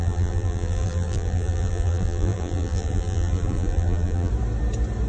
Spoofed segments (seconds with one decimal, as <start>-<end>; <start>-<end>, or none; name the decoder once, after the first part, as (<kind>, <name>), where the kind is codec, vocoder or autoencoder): 0.0-4.3 (vocoder, BigVGAN v2)